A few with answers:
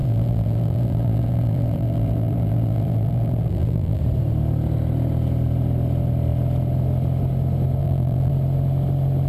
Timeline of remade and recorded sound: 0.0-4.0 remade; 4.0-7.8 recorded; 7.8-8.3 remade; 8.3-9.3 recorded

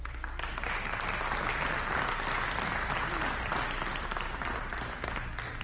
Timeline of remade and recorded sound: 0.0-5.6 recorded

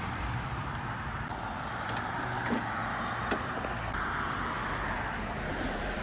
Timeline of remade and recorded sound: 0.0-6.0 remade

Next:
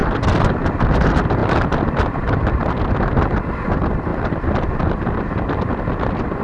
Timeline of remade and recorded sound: 0.0-0.6 remade; 0.6-1.4 recorded; 1.4-2.7 remade; 2.7-4.1 recorded; 4.1-5.1 remade; 5.1-6.4 recorded

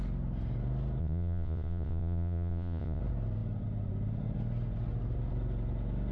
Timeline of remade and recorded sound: 0.0-1.0 recorded; 1.0-3.0 remade; 3.0-6.1 recorded

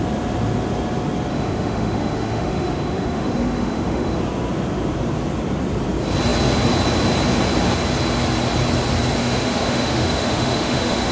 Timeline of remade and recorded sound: 0.0-1.3 recorded; 1.3-4.2 remade; 4.2-9.2 recorded; 9.2-11.1 remade

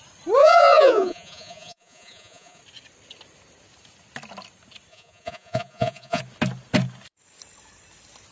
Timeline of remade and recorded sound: 0.0-0.4 recorded; 0.4-2.6 remade; 2.6-4.9 recorded; 4.9-6.2 remade; 6.2-8.3 recorded